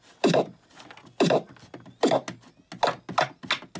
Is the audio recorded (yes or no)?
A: yes